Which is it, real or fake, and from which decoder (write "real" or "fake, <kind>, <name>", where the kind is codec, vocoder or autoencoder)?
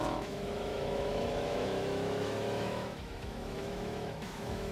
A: fake, autoencoder, DAC-VAE